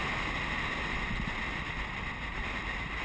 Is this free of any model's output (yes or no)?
yes